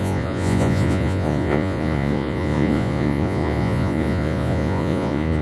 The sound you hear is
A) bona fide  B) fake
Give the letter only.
B